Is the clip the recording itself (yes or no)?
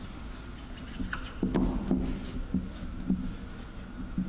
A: yes